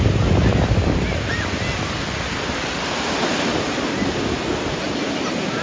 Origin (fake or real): real